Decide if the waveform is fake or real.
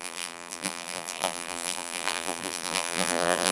fake